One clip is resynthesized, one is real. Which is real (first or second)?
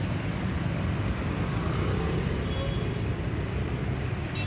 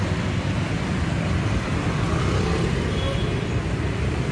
first